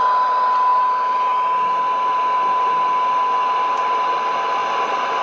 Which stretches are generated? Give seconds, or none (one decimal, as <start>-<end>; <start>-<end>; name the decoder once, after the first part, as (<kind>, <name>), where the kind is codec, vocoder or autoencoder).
none